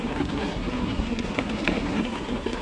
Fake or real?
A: fake